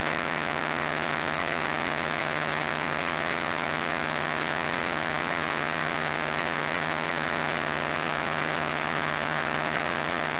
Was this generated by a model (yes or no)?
yes